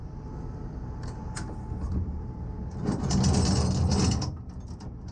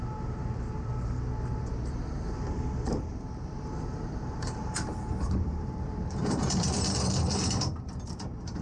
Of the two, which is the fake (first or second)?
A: second